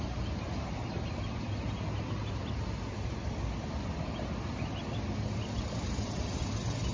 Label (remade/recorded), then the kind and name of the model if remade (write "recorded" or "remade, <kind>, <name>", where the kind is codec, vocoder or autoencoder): recorded